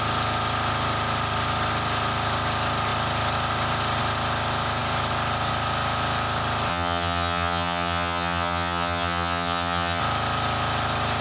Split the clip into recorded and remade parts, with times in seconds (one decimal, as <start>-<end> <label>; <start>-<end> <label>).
0.0-6.7 recorded; 6.7-10.0 remade; 10.0-11.2 recorded